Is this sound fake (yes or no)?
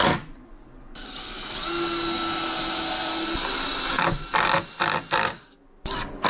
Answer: no